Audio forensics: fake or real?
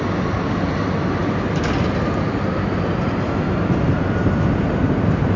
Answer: real